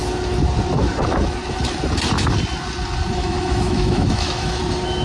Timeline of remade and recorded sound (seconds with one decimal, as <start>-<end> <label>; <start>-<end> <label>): 0.0-3.2 recorded; 3.2-4.6 remade; 4.6-5.0 recorded